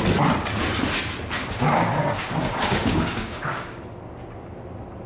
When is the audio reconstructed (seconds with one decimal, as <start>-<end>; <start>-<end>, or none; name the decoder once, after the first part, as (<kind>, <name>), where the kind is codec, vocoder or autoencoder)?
1.4-3.8 (codec, DAC)

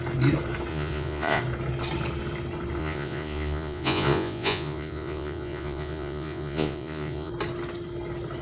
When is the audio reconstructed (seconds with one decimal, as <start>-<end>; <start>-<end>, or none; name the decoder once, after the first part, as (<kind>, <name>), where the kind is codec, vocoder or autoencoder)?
0.7-1.4 (vocoder, Vocos); 2.8-7.3

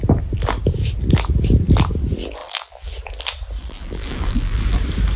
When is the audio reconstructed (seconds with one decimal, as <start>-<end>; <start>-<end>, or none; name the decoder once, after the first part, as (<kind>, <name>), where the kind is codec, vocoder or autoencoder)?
2.4-2.9 (vocoder, BigVGAN v2); 3.6-4.8

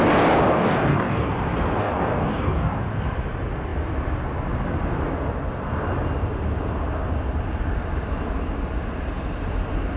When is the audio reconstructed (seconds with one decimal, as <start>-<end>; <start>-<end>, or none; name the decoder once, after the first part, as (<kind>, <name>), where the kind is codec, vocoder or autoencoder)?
0.5-1.3 (codec, DAC); 1.8-2.8

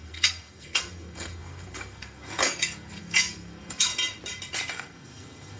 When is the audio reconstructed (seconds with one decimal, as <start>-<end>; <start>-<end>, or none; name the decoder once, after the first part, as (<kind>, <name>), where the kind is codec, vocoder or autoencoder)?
0.0-3.9 (codec, SNAC); 4.7-5.6

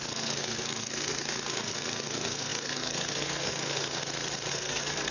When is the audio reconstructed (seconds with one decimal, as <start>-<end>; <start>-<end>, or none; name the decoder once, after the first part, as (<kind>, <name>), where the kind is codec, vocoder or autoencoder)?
0.0-4.0 (codec, SNAC); 4.5-5.1

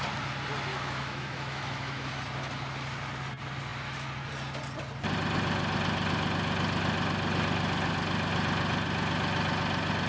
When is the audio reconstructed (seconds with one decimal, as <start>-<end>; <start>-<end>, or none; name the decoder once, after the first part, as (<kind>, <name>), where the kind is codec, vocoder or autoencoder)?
0.7-2.1 (autoencoder, DAC-VAE)